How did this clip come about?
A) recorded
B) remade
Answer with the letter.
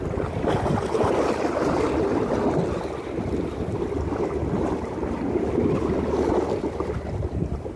A